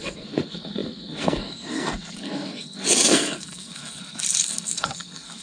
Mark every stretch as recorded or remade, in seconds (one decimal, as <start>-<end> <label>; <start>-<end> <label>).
0.0-5.4 remade